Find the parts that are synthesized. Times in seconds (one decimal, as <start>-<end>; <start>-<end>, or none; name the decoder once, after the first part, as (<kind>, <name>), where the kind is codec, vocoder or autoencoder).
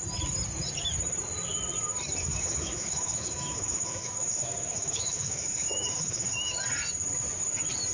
2.3-6.6 (autoencoder, DAC-VAE)